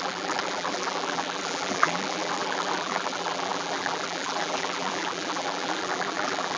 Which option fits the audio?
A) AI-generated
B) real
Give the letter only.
A